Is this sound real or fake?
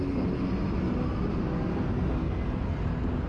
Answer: real